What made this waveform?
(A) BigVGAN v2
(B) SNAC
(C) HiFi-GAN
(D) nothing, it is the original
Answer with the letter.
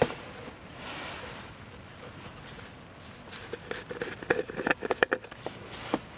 D